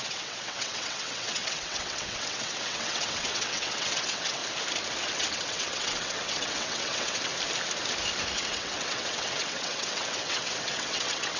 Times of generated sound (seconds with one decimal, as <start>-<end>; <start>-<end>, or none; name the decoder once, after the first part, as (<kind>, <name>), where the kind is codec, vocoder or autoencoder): 0.0-4.4 (vocoder, WaveNeXt); 5.0-7.3; 8.3-11.4